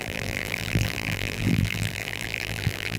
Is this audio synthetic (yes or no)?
yes